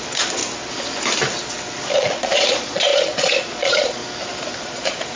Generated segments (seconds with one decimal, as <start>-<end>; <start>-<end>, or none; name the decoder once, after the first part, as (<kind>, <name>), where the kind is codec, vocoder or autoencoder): 0.0-0.4 (vocoder, Vocos); 2.0-4.0; 4.6-5.2